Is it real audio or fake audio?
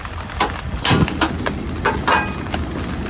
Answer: real